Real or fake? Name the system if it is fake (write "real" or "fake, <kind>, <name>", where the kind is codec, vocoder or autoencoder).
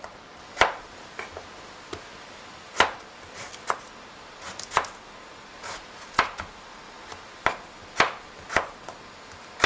real